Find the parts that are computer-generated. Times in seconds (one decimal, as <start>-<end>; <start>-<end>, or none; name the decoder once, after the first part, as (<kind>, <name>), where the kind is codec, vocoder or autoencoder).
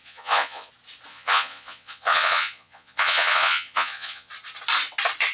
0.0-0.7 (vocoder, Vocos); 1.1-4.3